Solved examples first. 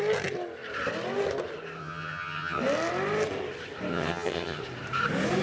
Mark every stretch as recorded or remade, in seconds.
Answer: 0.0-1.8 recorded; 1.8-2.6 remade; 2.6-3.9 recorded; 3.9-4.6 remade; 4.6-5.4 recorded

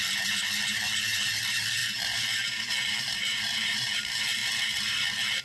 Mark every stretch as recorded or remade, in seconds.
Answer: 0.0-5.4 remade

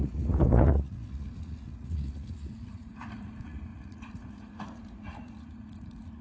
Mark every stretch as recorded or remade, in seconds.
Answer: 0.0-6.2 remade